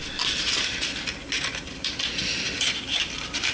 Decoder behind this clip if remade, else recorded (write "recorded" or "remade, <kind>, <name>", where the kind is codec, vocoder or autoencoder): recorded